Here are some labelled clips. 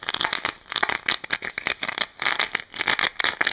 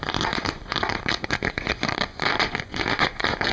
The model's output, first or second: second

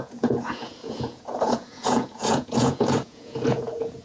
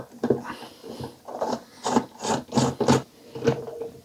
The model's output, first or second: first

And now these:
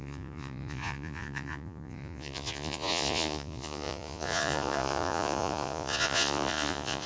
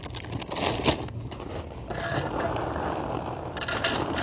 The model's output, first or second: first